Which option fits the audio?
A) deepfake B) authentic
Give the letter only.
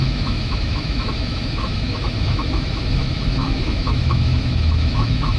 A